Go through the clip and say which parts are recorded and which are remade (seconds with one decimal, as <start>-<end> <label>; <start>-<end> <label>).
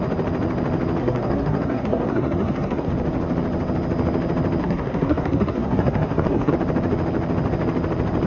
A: 0.0-1.0 recorded; 1.0-2.9 remade; 2.9-4.6 recorded; 4.6-6.5 remade; 6.5-8.3 recorded